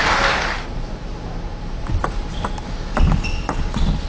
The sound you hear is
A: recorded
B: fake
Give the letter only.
A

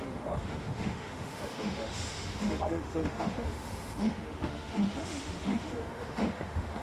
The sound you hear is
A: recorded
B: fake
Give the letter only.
B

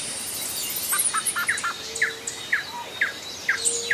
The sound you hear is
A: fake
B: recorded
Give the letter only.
B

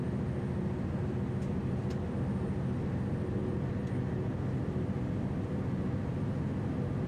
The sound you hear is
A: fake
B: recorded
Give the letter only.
B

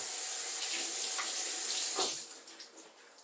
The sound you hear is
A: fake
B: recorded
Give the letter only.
B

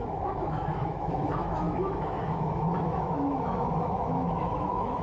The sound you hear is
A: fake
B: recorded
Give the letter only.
A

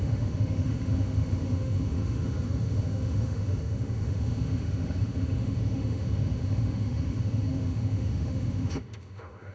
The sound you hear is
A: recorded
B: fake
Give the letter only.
B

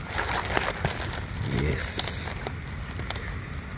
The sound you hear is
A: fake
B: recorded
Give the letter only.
B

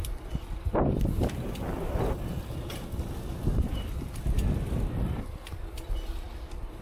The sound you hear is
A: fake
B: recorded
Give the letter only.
B